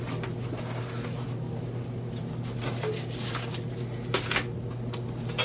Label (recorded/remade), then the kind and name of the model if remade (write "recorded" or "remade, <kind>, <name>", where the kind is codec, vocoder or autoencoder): recorded